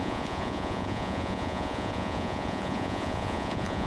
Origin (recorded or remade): remade